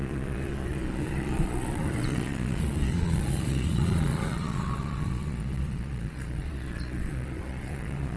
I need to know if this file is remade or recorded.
remade